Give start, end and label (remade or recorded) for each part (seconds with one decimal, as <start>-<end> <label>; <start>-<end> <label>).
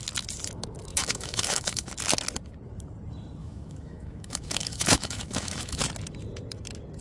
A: 0.0-0.9 recorded; 0.9-1.9 remade; 1.9-3.4 recorded; 3.4-5.8 remade; 5.8-7.0 recorded